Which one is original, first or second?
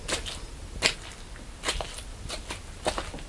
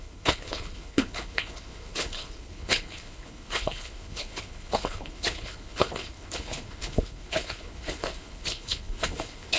first